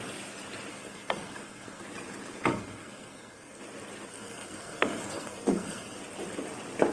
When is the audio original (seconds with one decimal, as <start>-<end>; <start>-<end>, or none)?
0.0-0.7; 1.8-2.5; 3.6-4.1; 6.0-6.9